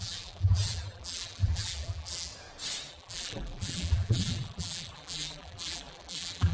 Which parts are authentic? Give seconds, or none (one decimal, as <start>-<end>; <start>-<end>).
2.3-2.9